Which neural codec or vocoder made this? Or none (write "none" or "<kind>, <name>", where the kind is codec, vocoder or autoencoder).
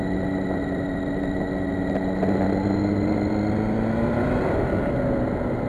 none